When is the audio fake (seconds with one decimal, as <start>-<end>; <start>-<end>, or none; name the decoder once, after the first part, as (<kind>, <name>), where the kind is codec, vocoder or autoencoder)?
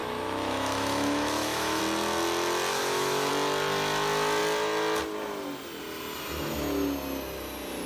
0.0-1.8 (autoencoder, DAC-VAE); 2.7-3.3